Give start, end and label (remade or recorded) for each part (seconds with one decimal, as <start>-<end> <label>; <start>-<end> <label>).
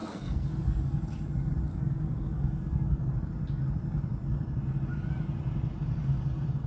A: 0.0-0.8 remade; 0.8-1.7 recorded; 1.7-3.0 remade; 3.0-6.7 recorded